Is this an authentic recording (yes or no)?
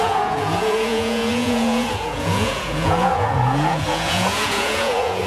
no